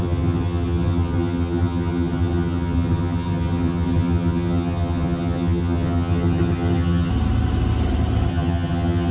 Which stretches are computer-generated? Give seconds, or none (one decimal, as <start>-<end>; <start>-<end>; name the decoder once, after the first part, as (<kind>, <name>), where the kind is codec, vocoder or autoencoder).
0.0-7.1 (vocoder, HiFi-GAN); 8.3-9.1